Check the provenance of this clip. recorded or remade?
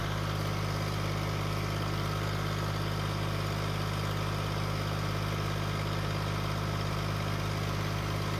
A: recorded